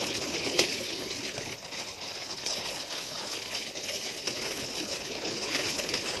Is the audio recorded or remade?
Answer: remade